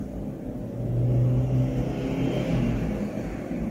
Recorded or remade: recorded